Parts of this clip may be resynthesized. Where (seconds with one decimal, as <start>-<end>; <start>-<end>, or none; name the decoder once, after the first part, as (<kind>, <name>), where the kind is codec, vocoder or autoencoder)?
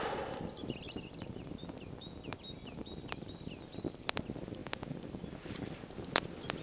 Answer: none